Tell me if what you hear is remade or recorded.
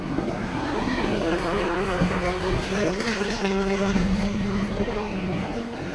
remade